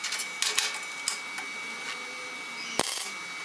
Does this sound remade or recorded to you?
recorded